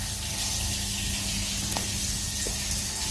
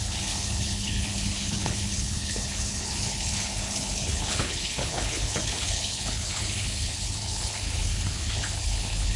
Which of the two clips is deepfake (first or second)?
second